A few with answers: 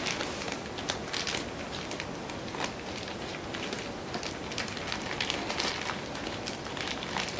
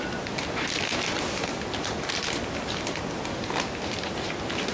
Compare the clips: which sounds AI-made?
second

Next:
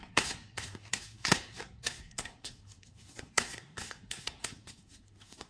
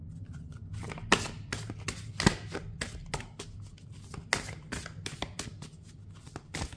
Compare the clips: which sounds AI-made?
first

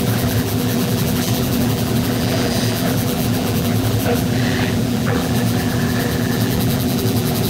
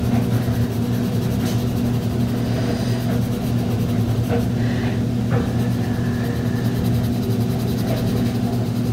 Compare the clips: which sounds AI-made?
first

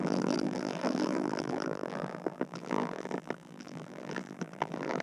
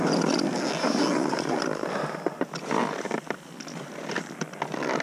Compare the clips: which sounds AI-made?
first